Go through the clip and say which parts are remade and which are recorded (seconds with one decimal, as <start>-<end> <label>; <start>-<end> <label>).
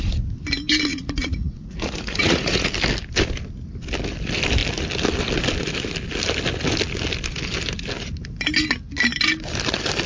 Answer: 0.0-0.9 recorded; 0.9-2.7 remade; 2.7-10.1 recorded